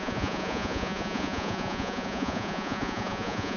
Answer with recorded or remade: remade